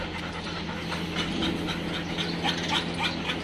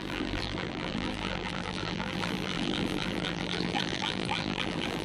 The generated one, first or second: second